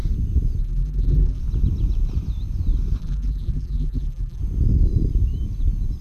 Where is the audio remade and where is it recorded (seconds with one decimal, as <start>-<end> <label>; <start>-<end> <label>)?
0.0-0.6 recorded; 0.6-1.4 remade; 1.4-3.0 recorded; 3.0-4.4 remade; 4.4-6.0 recorded